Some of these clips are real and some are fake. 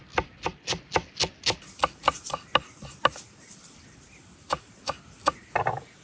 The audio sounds real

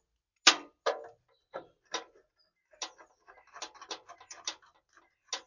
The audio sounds real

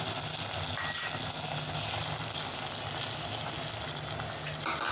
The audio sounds real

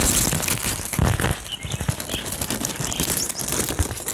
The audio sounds real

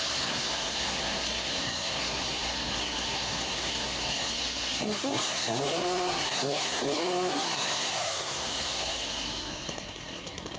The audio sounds fake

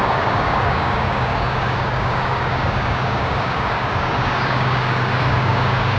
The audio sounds fake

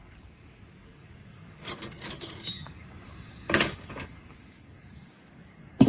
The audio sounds fake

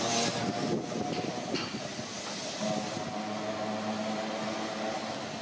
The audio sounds real